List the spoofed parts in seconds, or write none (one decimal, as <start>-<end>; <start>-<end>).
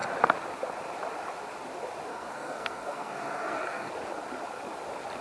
2.1-3.9